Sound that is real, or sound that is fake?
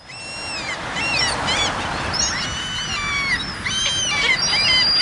real